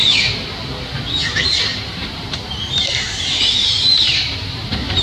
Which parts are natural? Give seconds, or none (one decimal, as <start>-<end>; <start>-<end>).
0.0-1.7